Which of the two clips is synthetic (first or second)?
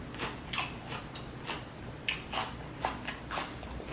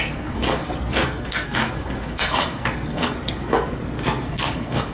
second